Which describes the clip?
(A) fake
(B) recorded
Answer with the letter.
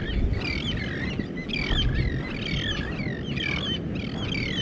B